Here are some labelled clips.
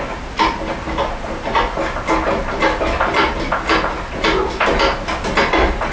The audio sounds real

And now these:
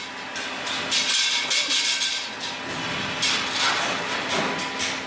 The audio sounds real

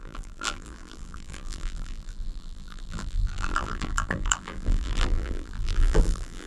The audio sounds fake